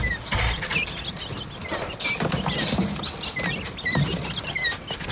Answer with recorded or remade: recorded